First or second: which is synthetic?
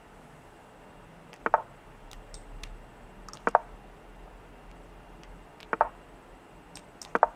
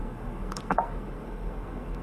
second